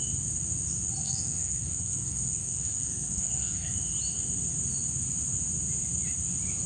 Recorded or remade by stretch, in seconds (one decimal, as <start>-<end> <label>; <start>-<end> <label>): 0.0-1.0 recorded; 1.0-3.7 remade; 3.7-6.7 recorded